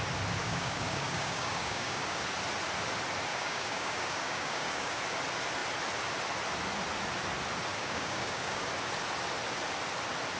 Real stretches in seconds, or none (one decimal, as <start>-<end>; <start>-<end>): 0.0-0.4; 2.2-3.3; 5.0-7.7; 8.7-10.4